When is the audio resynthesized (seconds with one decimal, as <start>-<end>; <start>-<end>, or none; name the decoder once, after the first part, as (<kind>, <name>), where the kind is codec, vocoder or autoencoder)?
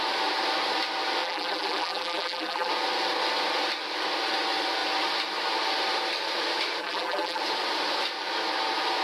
1.2-2.7 (vocoder, BigVGAN v2); 6.8-7.4